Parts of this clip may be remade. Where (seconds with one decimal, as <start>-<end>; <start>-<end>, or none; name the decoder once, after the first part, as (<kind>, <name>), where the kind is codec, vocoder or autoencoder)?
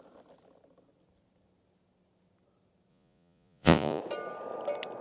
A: 2.9-4.0 (vocoder, Vocos)